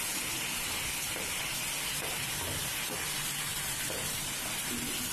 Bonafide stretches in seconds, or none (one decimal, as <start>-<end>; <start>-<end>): 0.0-5.1